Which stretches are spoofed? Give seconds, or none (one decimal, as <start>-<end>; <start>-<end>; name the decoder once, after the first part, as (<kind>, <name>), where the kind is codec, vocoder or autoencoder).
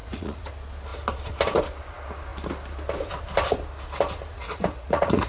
0.0-0.5 (vocoder, Vocos); 4.3-5.3